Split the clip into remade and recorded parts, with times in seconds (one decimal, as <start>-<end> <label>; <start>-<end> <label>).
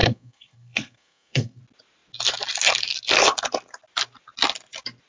0.0-1.6 remade; 1.6-5.1 recorded